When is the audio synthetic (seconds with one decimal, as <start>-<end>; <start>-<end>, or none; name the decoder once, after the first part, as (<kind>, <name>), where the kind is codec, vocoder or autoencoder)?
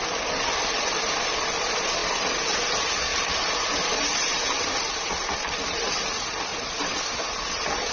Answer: none